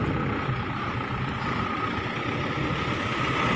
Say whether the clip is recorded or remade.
recorded